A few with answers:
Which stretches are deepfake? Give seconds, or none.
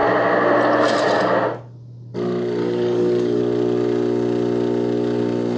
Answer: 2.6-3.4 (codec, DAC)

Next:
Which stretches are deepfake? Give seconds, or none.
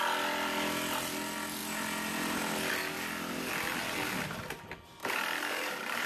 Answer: 5.0-6.1 (vocoder, BigVGAN v2)